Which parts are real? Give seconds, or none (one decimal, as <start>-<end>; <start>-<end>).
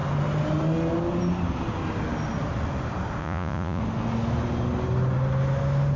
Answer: 0.0-3.2; 3.8-6.0